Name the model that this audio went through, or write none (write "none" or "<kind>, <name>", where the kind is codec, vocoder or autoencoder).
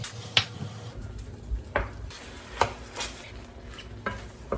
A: none